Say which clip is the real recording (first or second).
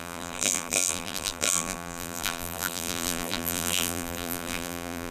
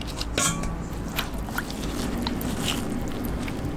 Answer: second